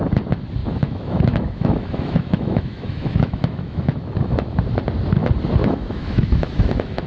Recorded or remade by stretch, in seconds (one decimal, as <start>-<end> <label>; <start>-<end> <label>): 0.0-0.6 recorded; 0.6-4.6 remade; 4.6-5.6 recorded; 5.6-7.1 remade